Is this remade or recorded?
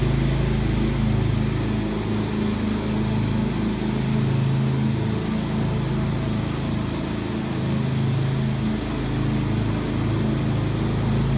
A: recorded